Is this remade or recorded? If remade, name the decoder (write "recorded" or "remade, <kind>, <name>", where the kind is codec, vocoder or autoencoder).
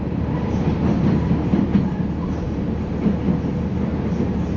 recorded